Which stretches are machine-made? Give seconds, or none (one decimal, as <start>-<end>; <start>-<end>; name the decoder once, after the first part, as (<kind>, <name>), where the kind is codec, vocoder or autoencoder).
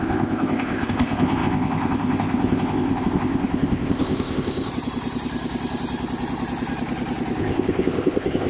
0.0-4.7 (codec, ZipCodec); 7.4-8.5